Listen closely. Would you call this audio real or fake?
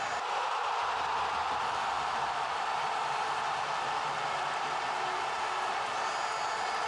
real